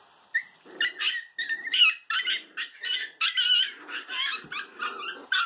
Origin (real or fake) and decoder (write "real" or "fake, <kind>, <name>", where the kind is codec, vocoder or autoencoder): real